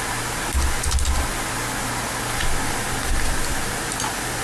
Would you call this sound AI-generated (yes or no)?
no